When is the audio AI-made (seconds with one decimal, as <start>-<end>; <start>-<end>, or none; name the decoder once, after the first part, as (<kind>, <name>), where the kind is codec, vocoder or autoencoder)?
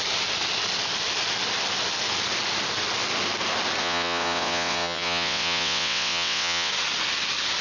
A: 3.8-6.7 (vocoder, WaveNeXt)